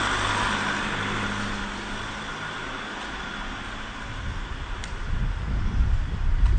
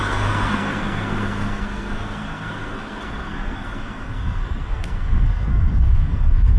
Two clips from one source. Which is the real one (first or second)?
first